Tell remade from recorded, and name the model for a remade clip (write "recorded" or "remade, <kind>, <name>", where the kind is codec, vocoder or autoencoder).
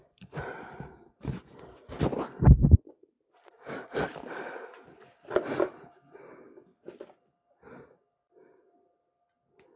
recorded